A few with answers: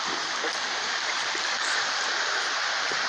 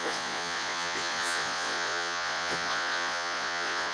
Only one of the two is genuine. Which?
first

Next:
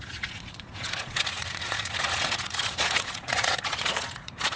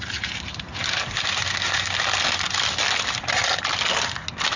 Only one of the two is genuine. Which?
second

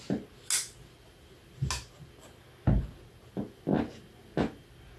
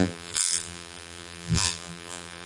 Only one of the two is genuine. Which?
first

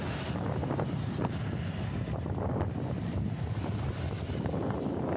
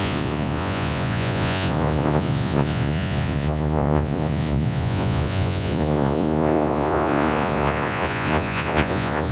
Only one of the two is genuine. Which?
first